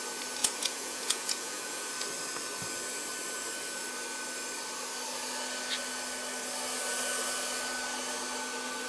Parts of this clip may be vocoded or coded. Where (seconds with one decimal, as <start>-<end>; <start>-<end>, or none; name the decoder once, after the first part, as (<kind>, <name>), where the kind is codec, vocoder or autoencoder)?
0.4-1.9 (vocoder, Vocos)